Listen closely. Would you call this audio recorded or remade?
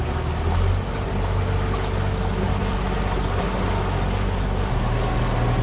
recorded